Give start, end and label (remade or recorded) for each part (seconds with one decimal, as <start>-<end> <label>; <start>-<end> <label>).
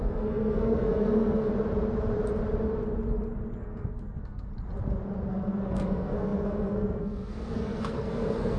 0.0-1.5 remade; 1.5-3.6 recorded; 3.6-4.5 remade; 4.5-5.3 recorded; 5.3-8.6 remade